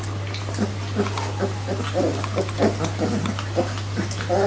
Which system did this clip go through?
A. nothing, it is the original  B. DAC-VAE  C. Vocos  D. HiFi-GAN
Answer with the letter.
A